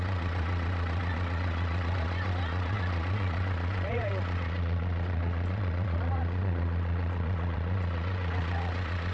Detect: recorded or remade remade